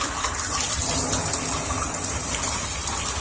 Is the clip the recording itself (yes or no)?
yes